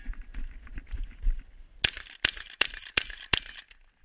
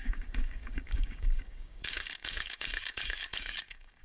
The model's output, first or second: second